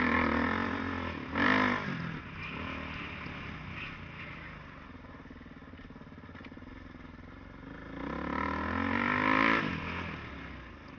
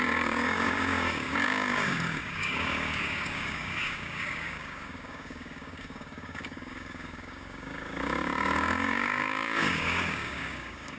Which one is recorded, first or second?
first